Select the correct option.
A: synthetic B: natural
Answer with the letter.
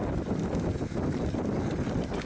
B